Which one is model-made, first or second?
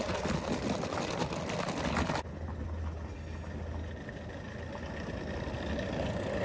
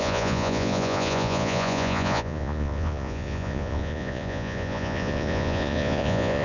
second